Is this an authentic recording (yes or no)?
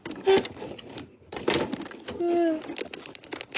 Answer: yes